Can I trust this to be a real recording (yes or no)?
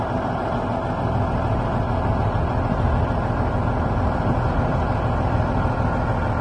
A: yes